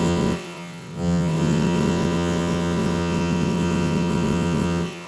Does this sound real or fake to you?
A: fake